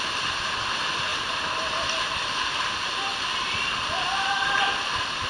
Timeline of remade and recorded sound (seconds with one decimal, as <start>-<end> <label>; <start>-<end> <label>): 0.0-1.1 remade; 1.1-2.5 recorded; 2.5-5.3 remade